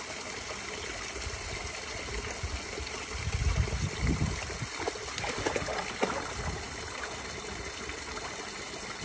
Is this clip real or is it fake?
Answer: real